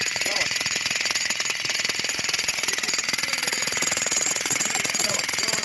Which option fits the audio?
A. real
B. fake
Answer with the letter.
B